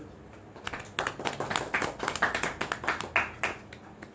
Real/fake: real